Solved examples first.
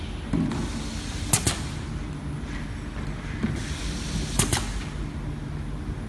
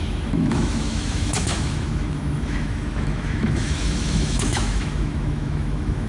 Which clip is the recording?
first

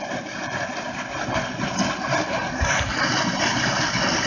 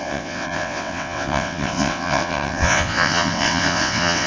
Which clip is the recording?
first